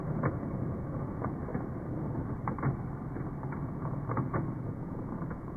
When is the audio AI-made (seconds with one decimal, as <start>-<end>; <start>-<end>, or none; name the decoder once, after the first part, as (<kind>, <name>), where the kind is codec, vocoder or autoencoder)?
0.0-1.4 (vocoder, Vocos); 3.6-5.6